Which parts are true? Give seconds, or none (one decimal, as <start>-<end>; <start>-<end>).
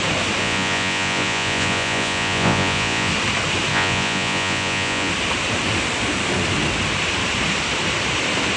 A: 0.0-0.4; 3.1-3.7; 5.1-8.6